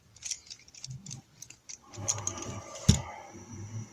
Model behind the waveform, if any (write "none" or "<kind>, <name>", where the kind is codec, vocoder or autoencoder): none